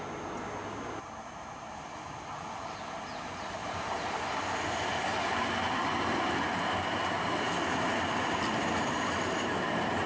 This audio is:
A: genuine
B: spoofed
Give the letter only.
A